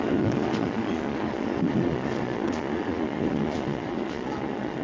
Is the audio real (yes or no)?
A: no